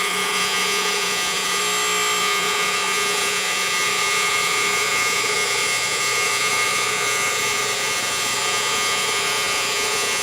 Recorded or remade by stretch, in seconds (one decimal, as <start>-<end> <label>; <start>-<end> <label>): 0.0-1.6 remade; 1.6-2.2 recorded; 2.2-10.2 remade